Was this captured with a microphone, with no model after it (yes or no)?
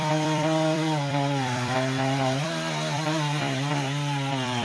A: no